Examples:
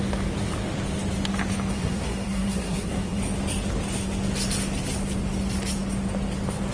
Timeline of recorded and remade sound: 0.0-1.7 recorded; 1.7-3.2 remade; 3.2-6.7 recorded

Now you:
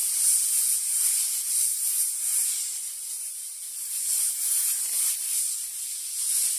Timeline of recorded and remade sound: 0.0-6.6 recorded